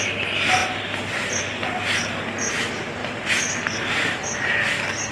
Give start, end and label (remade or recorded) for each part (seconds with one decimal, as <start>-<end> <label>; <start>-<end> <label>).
0.0-5.1 recorded

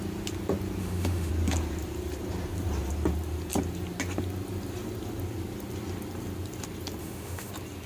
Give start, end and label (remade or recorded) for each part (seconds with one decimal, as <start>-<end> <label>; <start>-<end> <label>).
0.0-0.8 recorded; 0.8-1.3 remade; 1.3-7.0 recorded; 7.0-7.5 remade; 7.5-7.9 recorded